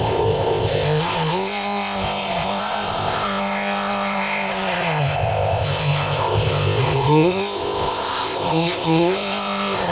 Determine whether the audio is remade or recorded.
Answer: remade